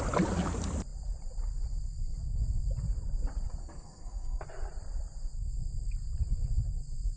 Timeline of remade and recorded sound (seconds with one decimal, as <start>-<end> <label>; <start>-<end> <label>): 0.0-3.6 recorded; 3.6-4.4 remade; 4.4-7.2 recorded